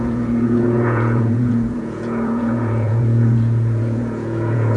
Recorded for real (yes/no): no